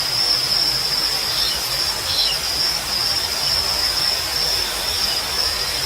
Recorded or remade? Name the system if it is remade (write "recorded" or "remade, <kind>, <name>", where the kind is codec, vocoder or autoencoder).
recorded